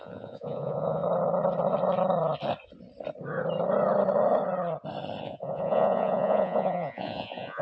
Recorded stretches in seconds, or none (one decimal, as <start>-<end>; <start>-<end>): 1.0-5.2